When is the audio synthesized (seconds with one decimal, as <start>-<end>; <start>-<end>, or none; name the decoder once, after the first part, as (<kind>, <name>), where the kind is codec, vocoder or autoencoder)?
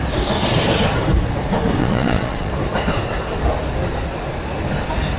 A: 1.8-2.5 (vocoder, Vocos)